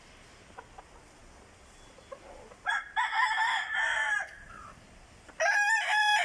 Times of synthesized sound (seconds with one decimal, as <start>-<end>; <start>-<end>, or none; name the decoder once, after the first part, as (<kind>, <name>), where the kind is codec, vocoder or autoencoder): none